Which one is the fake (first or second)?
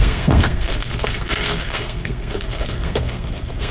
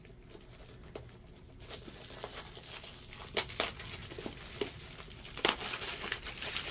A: first